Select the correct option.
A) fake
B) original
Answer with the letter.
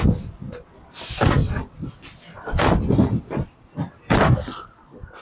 B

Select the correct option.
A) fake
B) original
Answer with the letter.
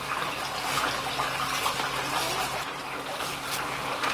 B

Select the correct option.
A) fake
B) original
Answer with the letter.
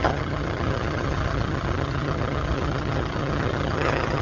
A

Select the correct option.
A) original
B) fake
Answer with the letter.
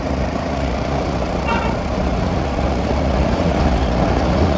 B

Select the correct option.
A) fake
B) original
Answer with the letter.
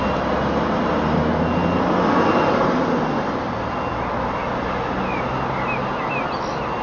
B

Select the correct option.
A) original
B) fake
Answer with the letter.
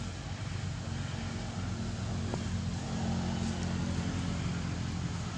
A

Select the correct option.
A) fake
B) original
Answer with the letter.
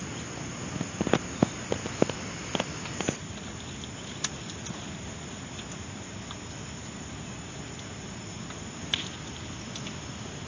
B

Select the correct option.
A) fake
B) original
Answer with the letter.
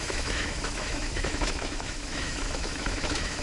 A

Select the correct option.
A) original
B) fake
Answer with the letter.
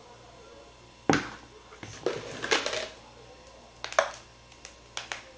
A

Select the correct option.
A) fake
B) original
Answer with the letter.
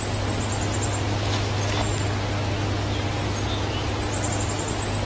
B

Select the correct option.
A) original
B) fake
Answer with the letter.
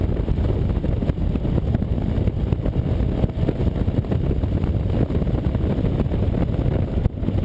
A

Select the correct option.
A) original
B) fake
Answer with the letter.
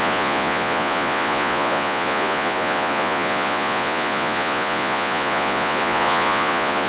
B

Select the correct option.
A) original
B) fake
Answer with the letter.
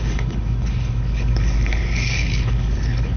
B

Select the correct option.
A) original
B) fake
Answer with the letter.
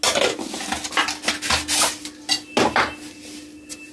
A